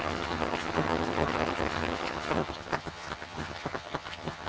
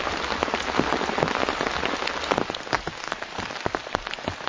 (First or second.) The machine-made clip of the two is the first